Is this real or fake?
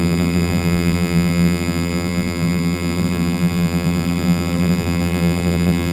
fake